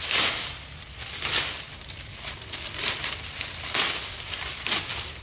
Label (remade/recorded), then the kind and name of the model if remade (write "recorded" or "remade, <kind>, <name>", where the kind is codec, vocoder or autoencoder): recorded